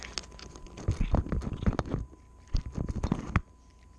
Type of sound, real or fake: real